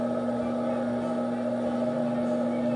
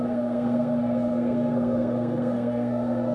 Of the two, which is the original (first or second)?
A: first